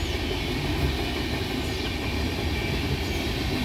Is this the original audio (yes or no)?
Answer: yes